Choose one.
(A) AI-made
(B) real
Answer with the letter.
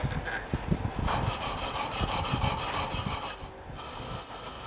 B